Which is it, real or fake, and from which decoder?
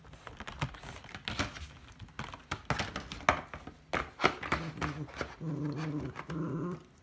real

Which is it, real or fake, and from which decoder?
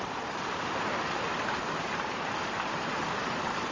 fake, vocoder, BigVGAN v2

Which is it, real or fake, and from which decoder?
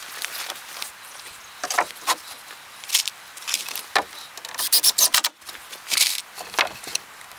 real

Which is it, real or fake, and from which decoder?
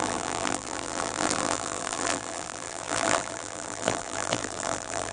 fake, vocoder, BigVGAN v2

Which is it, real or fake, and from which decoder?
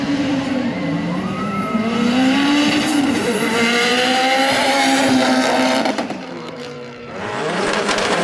fake, vocoder, BigVGAN v2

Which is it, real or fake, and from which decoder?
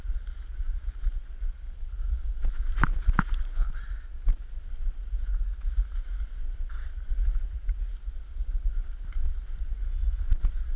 real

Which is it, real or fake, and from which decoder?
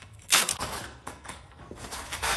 fake, codec, SNAC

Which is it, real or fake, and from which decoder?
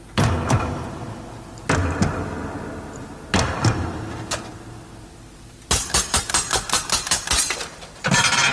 real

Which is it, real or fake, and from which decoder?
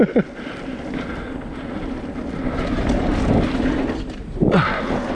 real